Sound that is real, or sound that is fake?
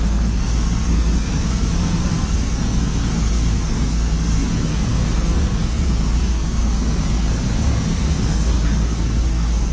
fake